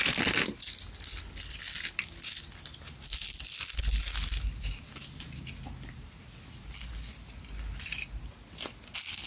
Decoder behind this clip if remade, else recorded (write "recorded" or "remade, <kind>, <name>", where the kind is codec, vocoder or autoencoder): recorded